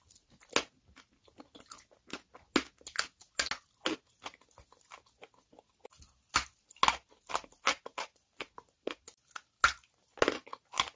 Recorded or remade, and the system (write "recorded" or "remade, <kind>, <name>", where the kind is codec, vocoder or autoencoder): recorded